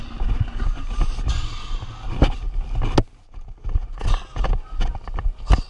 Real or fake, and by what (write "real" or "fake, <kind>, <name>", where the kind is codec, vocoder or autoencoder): real